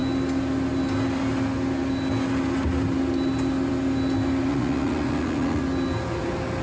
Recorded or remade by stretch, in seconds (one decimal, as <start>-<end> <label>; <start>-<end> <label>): 0.0-4.5 recorded; 4.5-5.6 remade; 5.6-6.6 recorded